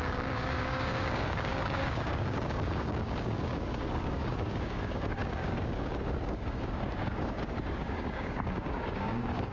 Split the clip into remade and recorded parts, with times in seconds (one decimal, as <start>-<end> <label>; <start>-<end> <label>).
0.0-9.5 remade